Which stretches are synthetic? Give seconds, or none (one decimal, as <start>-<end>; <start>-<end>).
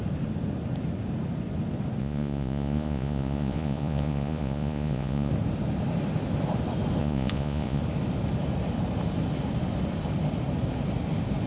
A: 2.0-5.3; 7.0-7.8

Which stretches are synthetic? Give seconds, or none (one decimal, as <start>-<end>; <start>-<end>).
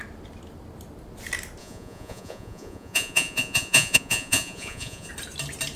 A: 1.6-5.1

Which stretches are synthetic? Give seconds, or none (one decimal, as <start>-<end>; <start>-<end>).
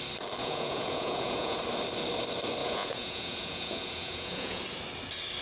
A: 0.4-1.6; 2.6-4.6